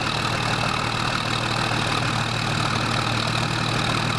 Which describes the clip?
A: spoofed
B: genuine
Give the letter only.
B